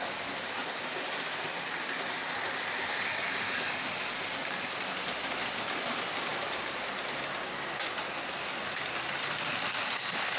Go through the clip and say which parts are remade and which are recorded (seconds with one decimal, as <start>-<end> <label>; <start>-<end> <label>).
0.0-6.3 recorded; 6.3-6.9 remade; 6.9-10.4 recorded

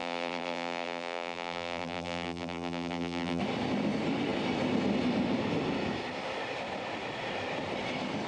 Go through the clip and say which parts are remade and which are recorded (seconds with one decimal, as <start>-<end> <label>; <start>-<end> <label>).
0.0-3.4 remade; 3.4-8.3 recorded

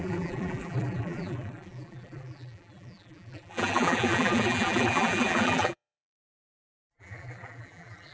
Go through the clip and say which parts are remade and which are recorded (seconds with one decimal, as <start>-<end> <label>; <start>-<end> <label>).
0.0-8.1 remade

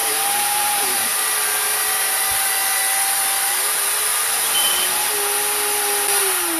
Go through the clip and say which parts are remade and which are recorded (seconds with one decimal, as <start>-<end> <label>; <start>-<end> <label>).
0.0-1.2 remade; 1.2-4.1 recorded; 4.1-4.7 remade; 4.7-6.6 recorded